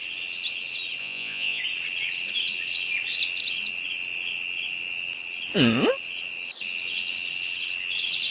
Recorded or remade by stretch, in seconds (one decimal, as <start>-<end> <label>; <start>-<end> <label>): 0.0-1.0 recorded; 1.0-1.6 remade; 1.6-8.3 recorded